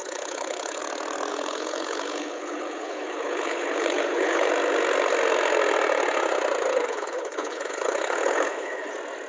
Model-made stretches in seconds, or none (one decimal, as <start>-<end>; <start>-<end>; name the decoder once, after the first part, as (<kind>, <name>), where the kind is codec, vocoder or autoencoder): 0.0-0.8 (codec, HILCodec); 1.3-4.5; 6.7-8.9